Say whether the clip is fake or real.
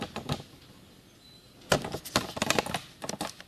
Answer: real